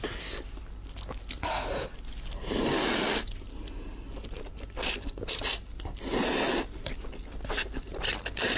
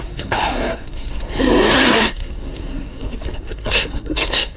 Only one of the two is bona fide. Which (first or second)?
first